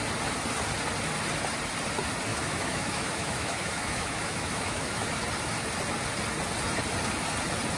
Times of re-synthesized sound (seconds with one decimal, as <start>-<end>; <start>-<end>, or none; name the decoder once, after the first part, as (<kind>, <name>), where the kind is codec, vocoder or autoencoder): 2.3-5.2 (autoencoder, DAC-VAE)